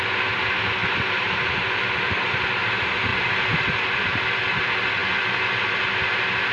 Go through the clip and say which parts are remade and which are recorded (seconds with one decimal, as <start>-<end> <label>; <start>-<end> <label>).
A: 0.0-0.8 recorded; 0.8-2.5 remade; 2.5-3.1 recorded; 3.1-4.6 remade; 4.6-6.5 recorded